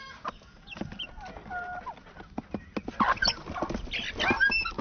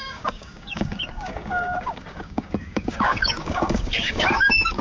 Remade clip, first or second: second